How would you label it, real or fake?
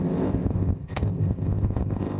fake